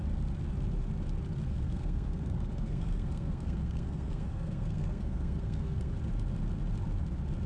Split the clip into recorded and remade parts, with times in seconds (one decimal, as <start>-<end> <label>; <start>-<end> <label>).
0.0-1.5 recorded; 1.5-5.9 remade; 5.9-7.5 recorded